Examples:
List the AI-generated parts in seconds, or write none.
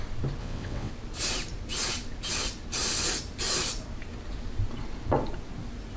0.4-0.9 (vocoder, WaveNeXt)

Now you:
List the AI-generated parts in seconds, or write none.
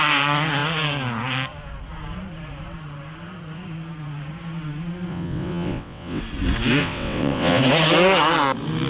5.1-6.2 (vocoder, WaveNeXt); 6.8-7.6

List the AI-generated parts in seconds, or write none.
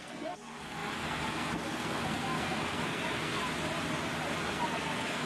0.0-3.4 (codec, SNAC); 4.4-5.3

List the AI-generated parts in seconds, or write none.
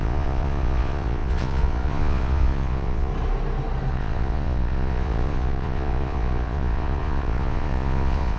0.0-3.1 (vocoder, Vocos); 3.9-8.4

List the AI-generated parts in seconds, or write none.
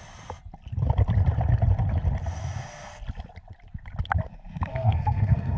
4.7-5.6 (codec, SNAC)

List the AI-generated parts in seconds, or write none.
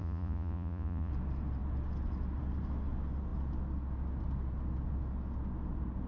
0.0-1.1 (vocoder, Vocos)